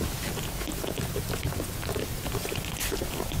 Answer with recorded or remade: recorded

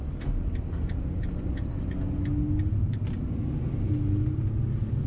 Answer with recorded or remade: recorded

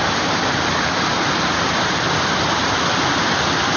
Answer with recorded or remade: remade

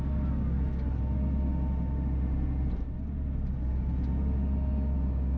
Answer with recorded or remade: recorded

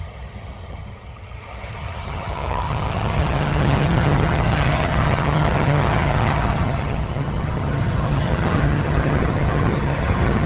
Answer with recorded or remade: remade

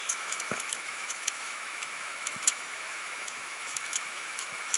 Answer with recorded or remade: remade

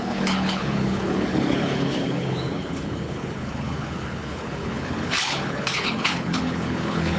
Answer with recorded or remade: remade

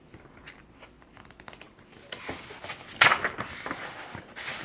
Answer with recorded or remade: recorded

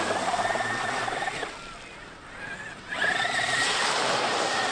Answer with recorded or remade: recorded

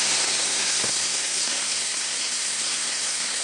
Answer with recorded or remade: remade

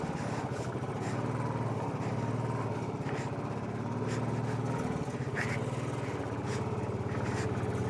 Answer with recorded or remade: recorded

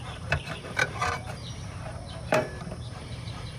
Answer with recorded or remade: remade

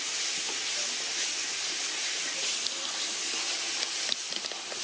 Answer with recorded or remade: recorded